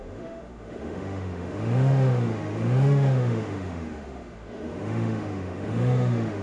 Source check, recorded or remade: remade